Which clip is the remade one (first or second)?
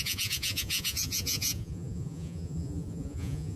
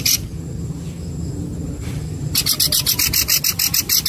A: first